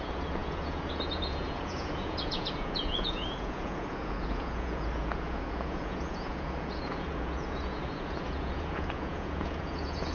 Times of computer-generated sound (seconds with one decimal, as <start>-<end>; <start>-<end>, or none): 0.0-10.1